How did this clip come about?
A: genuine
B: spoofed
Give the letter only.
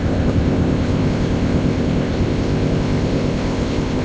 B